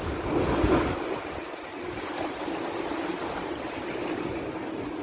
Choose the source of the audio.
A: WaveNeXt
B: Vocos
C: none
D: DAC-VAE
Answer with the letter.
C